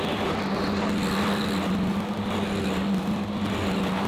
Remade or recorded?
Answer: recorded